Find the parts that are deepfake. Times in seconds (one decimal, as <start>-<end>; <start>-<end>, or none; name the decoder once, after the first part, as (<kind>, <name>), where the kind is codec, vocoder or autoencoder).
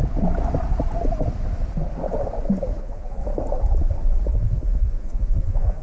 2.8-3.2 (vocoder, Vocos); 4.3-5.8